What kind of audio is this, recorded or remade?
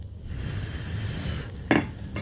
recorded